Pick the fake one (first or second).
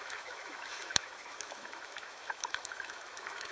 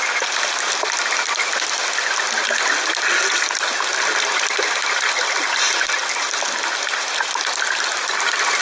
first